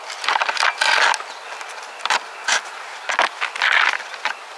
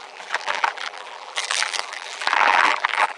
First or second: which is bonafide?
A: first